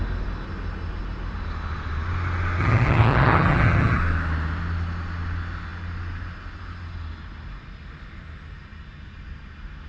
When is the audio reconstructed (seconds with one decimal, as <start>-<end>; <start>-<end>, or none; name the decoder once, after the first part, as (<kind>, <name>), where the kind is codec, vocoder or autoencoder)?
2.6-4.0 (vocoder, HiFi-GAN)